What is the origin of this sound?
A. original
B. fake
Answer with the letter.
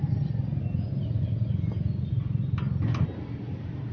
A